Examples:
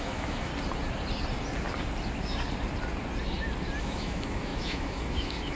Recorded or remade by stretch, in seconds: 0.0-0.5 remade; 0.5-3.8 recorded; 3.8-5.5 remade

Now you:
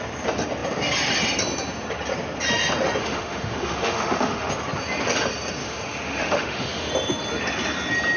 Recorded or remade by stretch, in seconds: 0.0-3.0 recorded; 3.0-4.5 remade; 4.5-5.6 recorded; 5.6-6.9 remade; 6.9-8.2 recorded

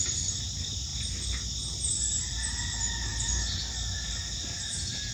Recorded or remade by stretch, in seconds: 0.0-5.1 recorded

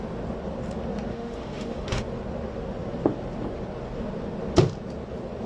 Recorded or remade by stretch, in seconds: 0.0-1.1 recorded; 1.1-2.0 remade; 2.0-5.5 recorded